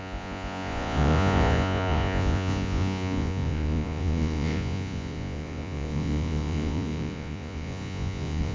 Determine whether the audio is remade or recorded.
remade